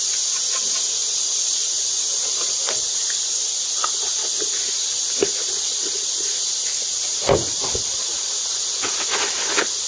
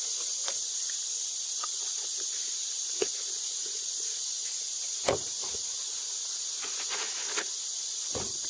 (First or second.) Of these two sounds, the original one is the first